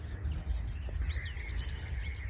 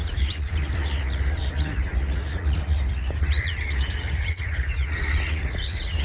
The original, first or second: first